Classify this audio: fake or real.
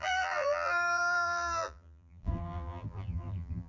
fake